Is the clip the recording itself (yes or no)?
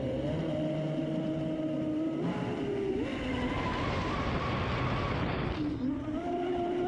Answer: yes